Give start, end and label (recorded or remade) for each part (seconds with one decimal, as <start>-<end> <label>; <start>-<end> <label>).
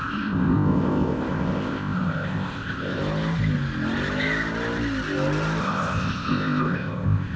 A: 0.0-3.0 remade; 3.0-5.6 recorded; 5.6-7.4 remade